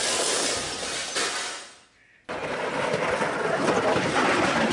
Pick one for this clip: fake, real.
real